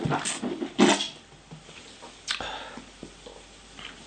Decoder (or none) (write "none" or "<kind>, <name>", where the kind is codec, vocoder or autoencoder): none